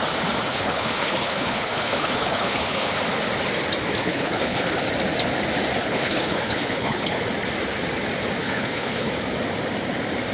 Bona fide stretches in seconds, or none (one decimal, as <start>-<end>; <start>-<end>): 0.0-0.5; 2.9-4.0; 4.8-5.8; 7.2-8.4; 9.1-10.3